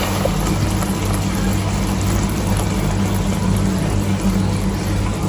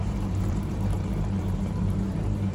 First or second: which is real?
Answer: first